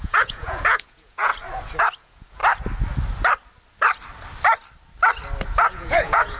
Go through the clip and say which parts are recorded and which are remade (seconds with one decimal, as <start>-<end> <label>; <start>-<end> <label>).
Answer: 0.0-1.3 remade; 1.3-2.0 recorded; 2.0-2.4 remade; 2.4-5.7 recorded; 5.7-6.4 remade